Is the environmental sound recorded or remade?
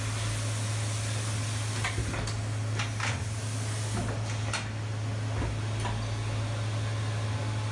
recorded